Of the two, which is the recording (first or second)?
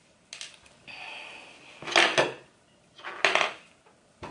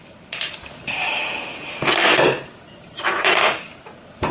first